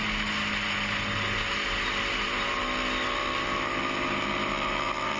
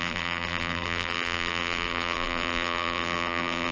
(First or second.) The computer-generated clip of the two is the second